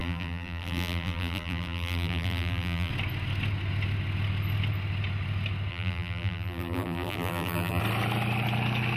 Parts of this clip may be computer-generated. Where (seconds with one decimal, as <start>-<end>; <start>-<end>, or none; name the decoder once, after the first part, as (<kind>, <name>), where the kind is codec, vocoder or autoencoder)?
0.0-2.9 (vocoder, BigVGAN v2); 5.7-7.8